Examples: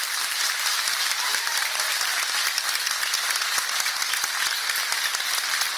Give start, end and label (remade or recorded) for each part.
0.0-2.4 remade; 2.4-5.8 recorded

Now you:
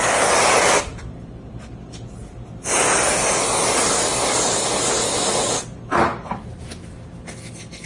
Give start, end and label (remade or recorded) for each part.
0.0-7.9 recorded

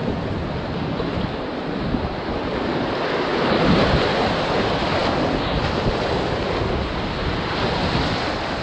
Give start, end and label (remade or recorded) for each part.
0.0-2.6 remade; 2.6-3.3 recorded; 3.3-4.1 remade; 4.1-8.6 recorded

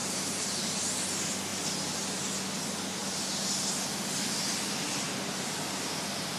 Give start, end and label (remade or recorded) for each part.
0.0-0.8 remade; 0.8-6.4 recorded

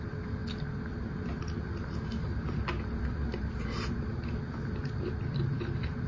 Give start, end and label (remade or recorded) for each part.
0.0-0.4 remade; 0.4-0.9 recorded; 0.9-6.1 remade

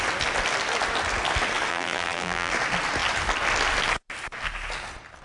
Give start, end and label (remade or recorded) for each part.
0.0-1.7 recorded; 1.7-2.5 remade; 2.5-5.2 recorded

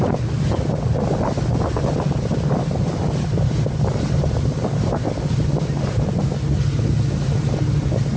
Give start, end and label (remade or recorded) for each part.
0.0-8.2 recorded